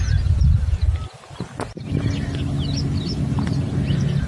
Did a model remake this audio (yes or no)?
no